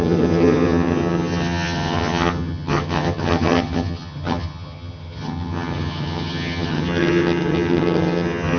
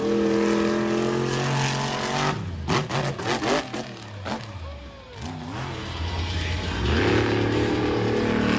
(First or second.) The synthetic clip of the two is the first